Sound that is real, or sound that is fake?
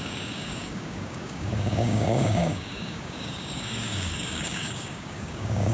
fake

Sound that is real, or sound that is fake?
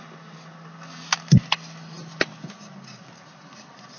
real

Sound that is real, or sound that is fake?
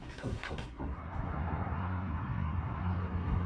fake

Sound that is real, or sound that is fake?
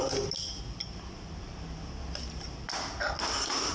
real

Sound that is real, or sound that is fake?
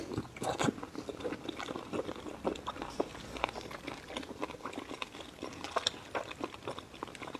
real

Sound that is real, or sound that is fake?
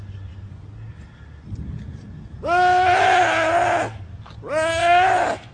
real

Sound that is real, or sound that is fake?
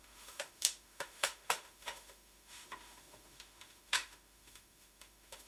fake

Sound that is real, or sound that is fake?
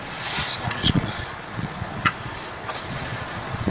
fake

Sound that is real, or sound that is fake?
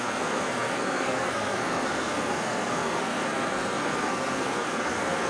fake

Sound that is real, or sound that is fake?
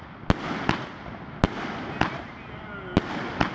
real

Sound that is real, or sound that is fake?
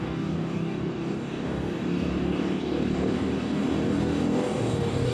fake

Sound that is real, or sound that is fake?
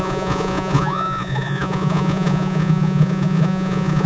fake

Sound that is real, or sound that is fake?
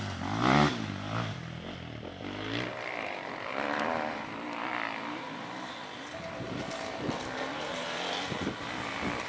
real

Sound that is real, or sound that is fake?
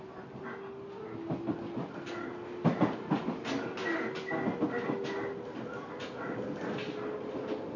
real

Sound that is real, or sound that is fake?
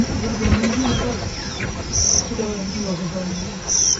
fake